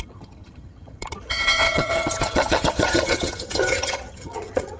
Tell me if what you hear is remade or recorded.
remade